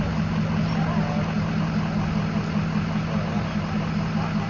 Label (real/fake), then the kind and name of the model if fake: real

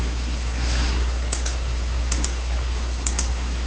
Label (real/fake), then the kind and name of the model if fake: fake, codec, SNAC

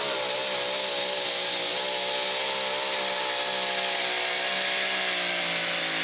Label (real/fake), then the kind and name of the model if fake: real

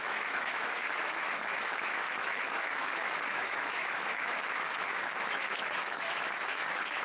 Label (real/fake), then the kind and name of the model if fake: fake, autoencoder, DAC-VAE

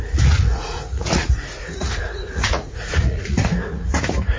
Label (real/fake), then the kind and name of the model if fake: fake, vocoder, Vocos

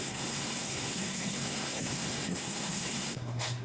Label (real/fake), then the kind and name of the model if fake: fake, codec, SNAC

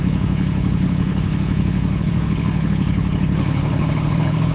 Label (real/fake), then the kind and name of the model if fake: fake, codec, HILCodec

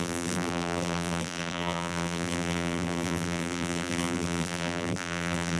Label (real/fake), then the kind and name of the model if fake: fake, vocoder, BigVGAN v2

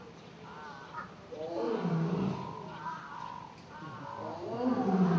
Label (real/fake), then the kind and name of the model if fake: real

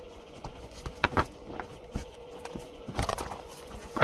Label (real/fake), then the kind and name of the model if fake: fake, vocoder, Vocos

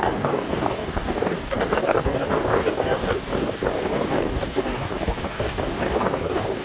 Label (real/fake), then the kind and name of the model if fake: fake, codec, DAC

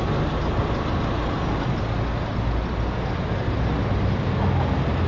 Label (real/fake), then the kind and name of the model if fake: real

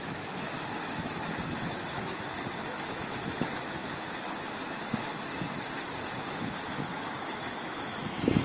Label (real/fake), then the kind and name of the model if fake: fake, autoencoder, DAC-VAE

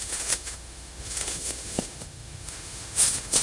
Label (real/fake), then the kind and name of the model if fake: fake, autoencoder, DAC-VAE